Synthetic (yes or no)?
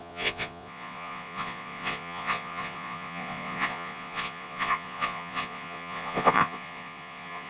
yes